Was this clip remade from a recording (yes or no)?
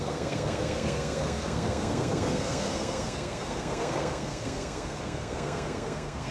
yes